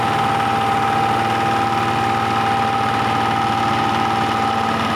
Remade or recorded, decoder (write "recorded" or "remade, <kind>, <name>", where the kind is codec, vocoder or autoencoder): recorded